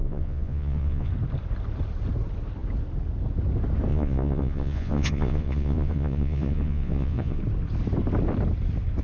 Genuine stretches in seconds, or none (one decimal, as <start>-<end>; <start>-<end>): 1.1-3.9; 7.4-9.0